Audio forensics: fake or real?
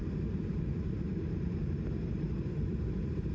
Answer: fake